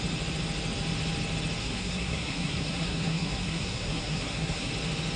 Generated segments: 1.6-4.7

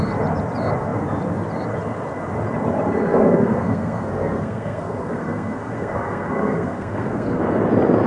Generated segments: 3.1-7.4

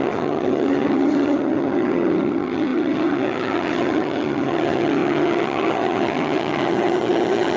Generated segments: 0.0-7.6

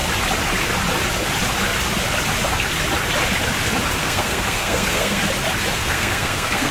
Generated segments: 4.0-5.2; 5.7-6.7